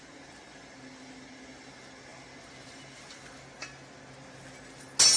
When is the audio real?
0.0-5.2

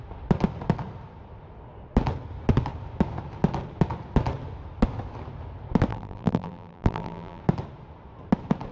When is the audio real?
0.0-5.9; 7.4-8.7

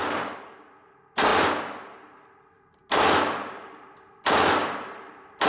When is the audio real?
0.0-5.5

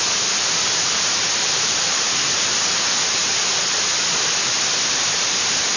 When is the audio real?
0.0-1.4; 2.7-5.8

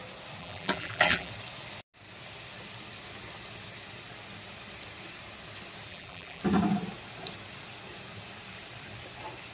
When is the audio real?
0.0-0.4; 1.3-5.9; 6.4-9.5

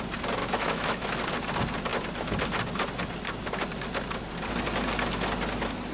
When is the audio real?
0.0-0.4; 1.2-5.9